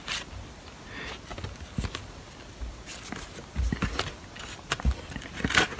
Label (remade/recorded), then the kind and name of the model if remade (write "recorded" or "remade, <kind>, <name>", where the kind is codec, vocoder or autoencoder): recorded